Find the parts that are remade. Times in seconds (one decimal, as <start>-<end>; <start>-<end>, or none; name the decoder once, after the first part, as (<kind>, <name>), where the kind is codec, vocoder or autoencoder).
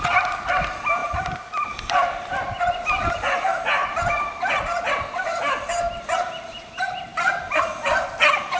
1.0-2.6 (vocoder, BigVGAN v2); 7.1-7.6